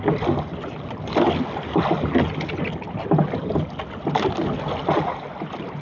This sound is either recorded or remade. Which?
recorded